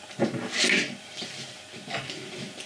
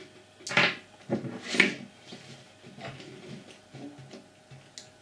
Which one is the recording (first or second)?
second